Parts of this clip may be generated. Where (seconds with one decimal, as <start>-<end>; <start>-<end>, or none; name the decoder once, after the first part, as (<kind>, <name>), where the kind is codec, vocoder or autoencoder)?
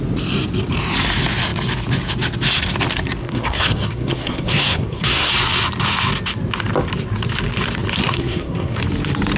3.2-5.3 (codec, SNAC); 8.0-8.8